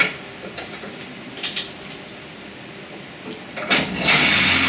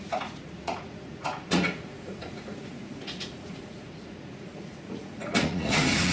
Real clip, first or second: first